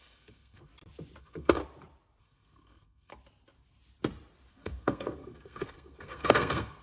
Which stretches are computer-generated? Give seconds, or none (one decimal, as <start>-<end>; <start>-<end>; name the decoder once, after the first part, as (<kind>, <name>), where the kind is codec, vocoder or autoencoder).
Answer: 0.0-0.7 (codec, SNAC); 1.2-1.6; 2.2-3.1; 4.5-6.8